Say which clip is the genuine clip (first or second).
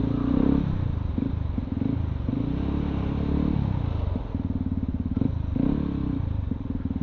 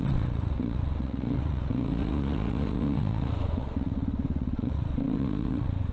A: first